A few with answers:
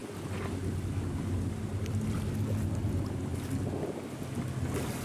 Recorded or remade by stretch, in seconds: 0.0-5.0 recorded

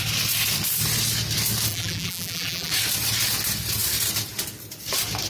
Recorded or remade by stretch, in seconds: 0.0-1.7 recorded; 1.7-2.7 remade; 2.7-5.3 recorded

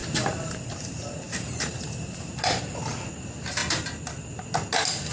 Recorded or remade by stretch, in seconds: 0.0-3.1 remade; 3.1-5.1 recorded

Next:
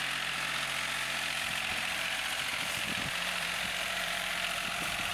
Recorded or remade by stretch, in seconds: 0.0-2.5 recorded; 2.5-5.1 remade